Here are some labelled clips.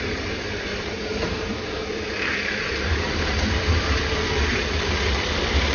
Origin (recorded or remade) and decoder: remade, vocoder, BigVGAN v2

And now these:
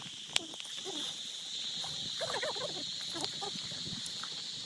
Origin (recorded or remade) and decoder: recorded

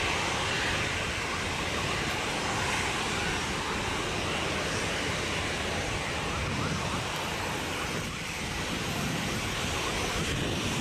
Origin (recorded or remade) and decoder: recorded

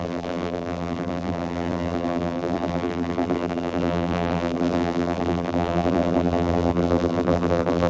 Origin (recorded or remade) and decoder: remade, vocoder, BigVGAN v2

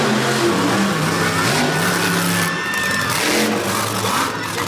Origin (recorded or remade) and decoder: recorded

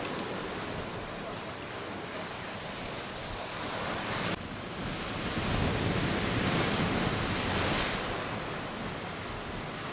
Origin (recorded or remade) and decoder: recorded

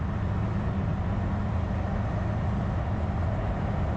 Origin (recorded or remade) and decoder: recorded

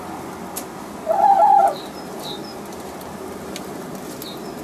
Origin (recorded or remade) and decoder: recorded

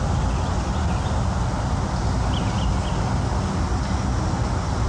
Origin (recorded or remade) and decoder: recorded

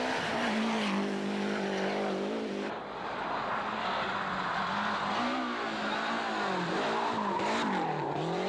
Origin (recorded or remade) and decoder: recorded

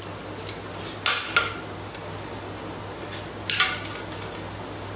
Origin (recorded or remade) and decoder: recorded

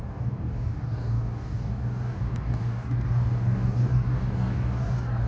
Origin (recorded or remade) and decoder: remade, codec, DAC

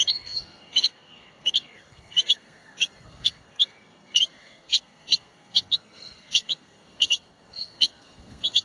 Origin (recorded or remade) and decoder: remade, codec, SNAC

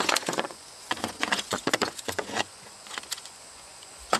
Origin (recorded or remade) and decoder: remade, vocoder, Vocos